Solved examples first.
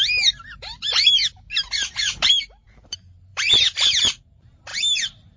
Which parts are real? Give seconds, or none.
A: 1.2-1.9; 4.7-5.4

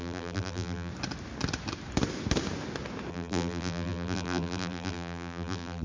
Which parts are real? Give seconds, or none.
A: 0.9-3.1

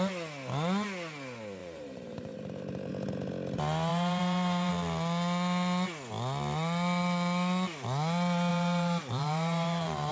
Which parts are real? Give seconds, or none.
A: 0.0-1.6; 2.9-3.9; 4.7-8.5